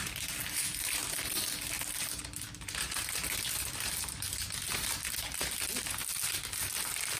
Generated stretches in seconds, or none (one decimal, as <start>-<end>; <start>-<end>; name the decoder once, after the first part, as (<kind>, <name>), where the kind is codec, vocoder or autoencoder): none

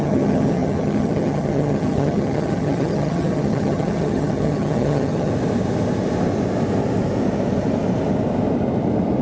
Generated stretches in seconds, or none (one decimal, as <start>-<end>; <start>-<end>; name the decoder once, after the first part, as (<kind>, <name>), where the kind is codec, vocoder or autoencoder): 0.0-5.3 (vocoder, HiFi-GAN)

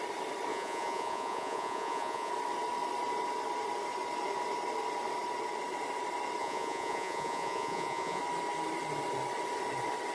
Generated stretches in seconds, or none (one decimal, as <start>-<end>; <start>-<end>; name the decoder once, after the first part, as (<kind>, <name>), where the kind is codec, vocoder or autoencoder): 0.5-2.3 (vocoder, Vocos); 6.4-8.2

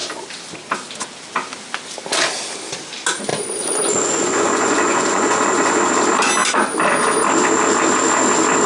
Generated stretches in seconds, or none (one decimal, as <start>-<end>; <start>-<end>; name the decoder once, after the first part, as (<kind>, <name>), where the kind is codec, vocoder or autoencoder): 3.3-5.9 (vocoder, Vocos)

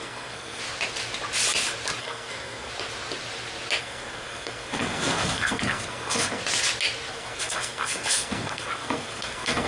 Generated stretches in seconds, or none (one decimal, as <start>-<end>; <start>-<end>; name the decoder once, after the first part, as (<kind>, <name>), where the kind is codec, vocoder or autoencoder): 0.0-0.6 (codec, SNAC); 2.0-2.7; 3.8-6.4; 7.1-9.7

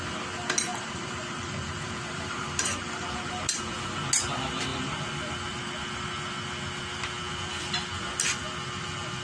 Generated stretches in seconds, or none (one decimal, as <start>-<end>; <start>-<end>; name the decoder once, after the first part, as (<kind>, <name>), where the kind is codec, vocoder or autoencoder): 0.7-3.7 (vocoder, BigVGAN v2); 4.7-5.7